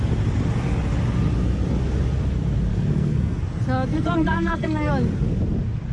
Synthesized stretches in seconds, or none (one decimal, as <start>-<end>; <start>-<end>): 2.7-3.4; 3.9-4.9